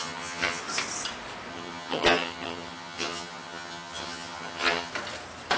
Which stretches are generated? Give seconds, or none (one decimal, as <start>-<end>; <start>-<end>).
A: 0.0-0.6; 1.5-4.9